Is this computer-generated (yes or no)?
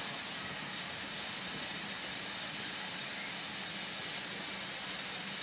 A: no